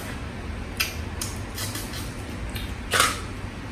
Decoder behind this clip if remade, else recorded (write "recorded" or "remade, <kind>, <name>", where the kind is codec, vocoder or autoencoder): recorded